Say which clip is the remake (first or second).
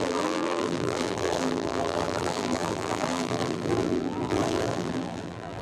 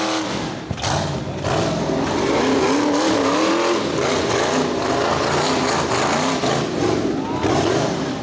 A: first